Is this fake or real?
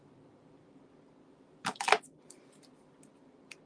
real